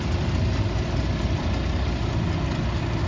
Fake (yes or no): no